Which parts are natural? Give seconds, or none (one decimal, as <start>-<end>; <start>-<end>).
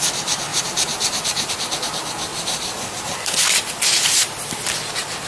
0.0-0.5; 1.5-2.3; 3.0-5.3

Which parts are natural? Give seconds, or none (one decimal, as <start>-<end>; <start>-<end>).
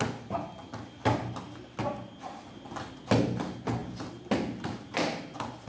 0.0-5.7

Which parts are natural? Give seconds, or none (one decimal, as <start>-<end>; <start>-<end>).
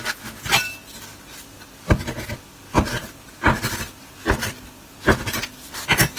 0.0-6.2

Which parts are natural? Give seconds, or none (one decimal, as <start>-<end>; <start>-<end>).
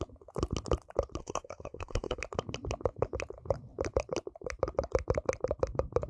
0.0-1.2; 2.2-6.1